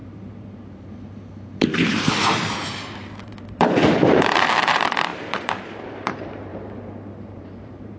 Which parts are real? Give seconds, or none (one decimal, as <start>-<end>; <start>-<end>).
6.5-7.1